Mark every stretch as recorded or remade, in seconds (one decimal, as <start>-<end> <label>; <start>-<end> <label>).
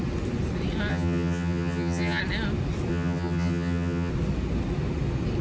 0.0-0.9 recorded; 0.9-2.2 remade; 2.2-2.9 recorded; 2.9-4.1 remade; 4.1-5.4 recorded